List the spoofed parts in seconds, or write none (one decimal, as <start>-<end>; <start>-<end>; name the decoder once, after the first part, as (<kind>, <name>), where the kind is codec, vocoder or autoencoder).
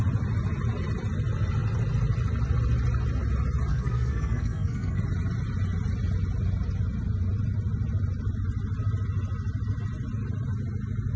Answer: 3.7-5.0 (codec, SNAC)